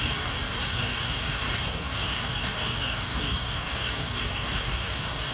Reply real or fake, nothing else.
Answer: fake